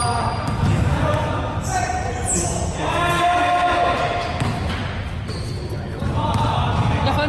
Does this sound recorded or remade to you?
recorded